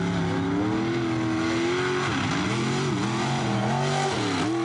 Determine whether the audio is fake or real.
real